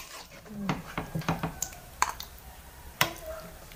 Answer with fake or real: fake